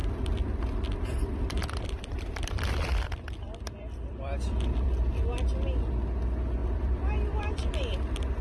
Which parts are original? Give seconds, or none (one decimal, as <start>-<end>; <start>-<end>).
0.0-1.6; 5.1-6.6; 7.7-8.4